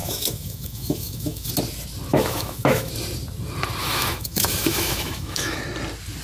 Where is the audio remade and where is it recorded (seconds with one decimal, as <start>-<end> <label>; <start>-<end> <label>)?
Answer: 0.0-1.5 remade; 1.5-2.1 recorded; 2.1-2.9 remade; 2.9-3.8 recorded; 3.8-5.6 remade; 5.6-6.2 recorded